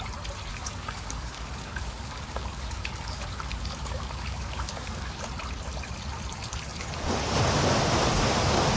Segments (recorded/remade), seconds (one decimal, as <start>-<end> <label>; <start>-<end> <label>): 0.0-0.5 recorded; 0.5-5.2 remade; 5.2-8.8 recorded

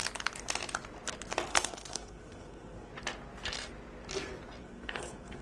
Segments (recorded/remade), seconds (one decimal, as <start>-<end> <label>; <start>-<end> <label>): 0.0-1.5 recorded; 1.5-2.9 remade; 2.9-4.6 recorded; 4.6-5.4 remade

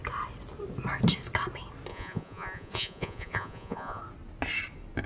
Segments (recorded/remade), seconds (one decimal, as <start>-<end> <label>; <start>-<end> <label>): 0.0-1.9 recorded; 1.9-4.0 remade; 4.0-5.1 recorded